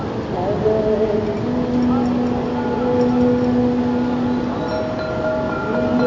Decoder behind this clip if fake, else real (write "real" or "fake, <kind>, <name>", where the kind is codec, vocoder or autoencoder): real